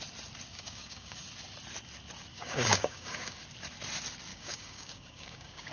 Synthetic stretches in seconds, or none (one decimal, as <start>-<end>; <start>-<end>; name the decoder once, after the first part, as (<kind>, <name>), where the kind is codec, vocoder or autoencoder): 0.5-1.2 (codec, DAC); 2.3-3.4; 4.3-5.7